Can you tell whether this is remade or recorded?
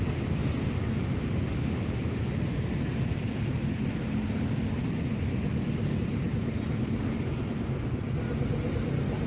recorded